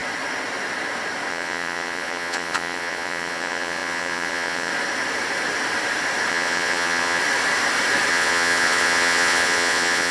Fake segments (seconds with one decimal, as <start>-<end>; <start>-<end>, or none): 1.3-4.7; 6.3-7.2; 8.1-10.1